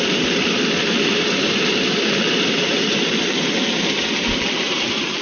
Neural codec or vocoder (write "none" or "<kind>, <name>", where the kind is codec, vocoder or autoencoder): vocoder, BigVGAN v2